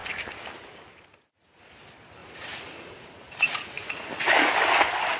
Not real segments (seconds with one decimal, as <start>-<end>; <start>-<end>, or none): 2.2-4.0